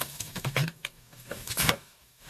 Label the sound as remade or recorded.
remade